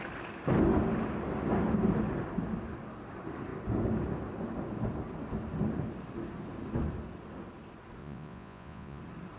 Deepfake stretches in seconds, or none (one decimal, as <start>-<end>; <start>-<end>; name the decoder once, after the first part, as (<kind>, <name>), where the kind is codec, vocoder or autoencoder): 8.0-9.0 (vocoder, Vocos)